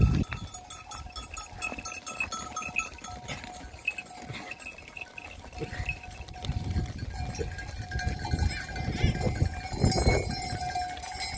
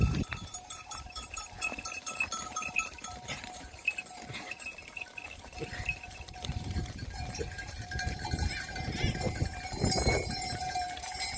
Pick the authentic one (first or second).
first